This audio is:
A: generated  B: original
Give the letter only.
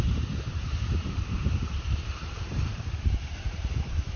A